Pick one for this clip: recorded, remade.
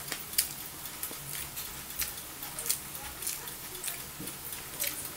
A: recorded